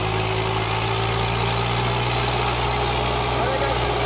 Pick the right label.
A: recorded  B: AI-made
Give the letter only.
A